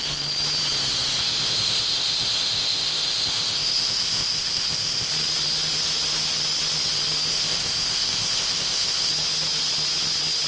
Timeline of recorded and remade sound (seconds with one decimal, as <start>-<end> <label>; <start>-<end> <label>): 0.0-1.2 recorded; 1.2-5.1 remade; 5.1-7.3 recorded; 7.3-9.1 remade; 9.1-10.5 recorded